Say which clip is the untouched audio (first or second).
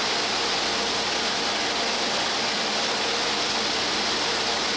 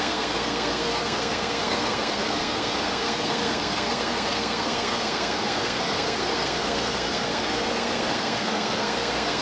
first